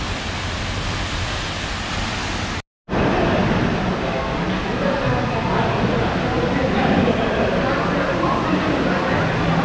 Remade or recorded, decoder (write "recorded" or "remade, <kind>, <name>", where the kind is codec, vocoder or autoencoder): recorded